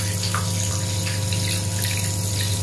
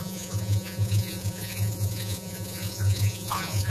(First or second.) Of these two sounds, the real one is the first